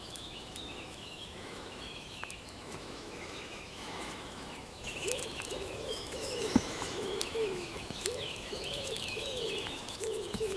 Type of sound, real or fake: fake